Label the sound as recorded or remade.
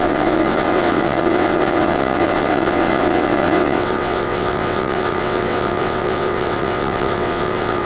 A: remade